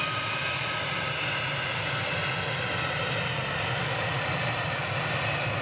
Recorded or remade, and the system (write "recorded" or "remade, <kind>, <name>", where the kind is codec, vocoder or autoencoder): recorded